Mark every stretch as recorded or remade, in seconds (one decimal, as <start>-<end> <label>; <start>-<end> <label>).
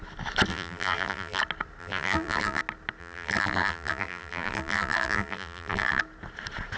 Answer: 0.0-0.5 recorded; 0.5-1.4 remade; 1.4-1.8 recorded; 1.8-2.6 remade; 2.6-3.0 recorded; 3.0-6.0 remade; 6.0-6.8 recorded